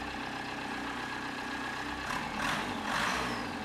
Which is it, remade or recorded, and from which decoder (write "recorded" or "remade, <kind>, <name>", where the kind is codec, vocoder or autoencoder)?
recorded